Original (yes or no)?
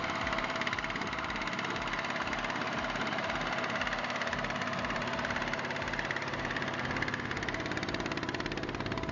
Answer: no